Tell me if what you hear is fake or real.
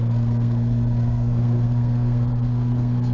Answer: fake